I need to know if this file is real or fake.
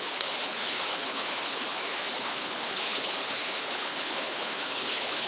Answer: fake